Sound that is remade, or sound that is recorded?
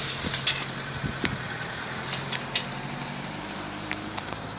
remade